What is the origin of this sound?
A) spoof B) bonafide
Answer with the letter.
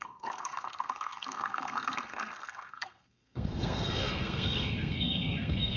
A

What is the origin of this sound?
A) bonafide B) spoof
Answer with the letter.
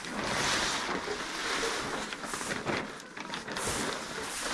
A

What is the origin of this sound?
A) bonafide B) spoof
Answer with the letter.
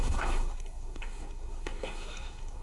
B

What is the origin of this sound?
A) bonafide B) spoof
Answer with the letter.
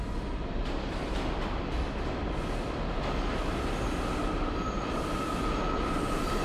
A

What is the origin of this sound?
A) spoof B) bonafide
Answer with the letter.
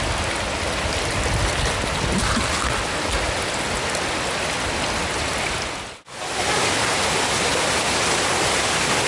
B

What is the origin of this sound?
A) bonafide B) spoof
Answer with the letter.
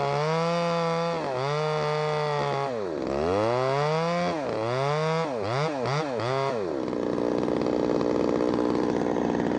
A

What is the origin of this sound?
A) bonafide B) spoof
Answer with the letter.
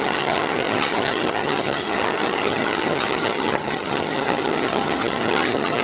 B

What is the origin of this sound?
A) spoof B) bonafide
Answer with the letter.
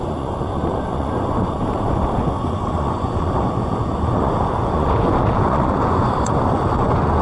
A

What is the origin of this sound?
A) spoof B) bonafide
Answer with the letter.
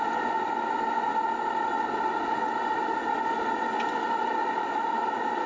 B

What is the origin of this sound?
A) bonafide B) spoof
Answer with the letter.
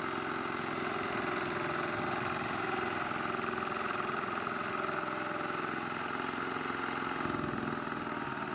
A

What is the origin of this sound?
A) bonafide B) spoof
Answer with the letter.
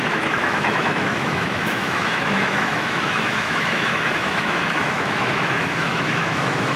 B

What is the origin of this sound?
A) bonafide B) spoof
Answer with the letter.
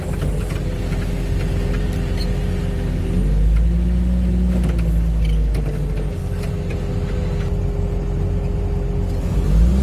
A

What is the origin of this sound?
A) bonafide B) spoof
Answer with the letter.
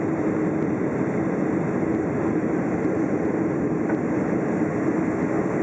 A